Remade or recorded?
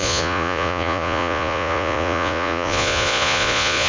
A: remade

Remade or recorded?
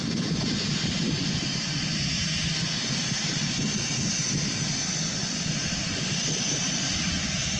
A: recorded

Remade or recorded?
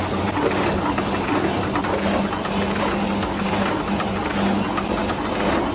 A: recorded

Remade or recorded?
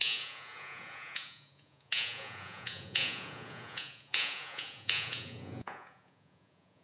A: remade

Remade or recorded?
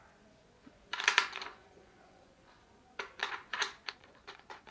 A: remade